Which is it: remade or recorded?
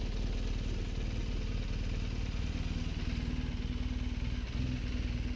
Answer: recorded